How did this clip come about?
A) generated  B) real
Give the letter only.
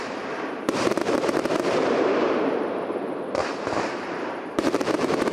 A